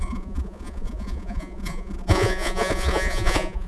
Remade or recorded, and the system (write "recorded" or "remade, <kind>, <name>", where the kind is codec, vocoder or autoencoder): remade, vocoder, Vocos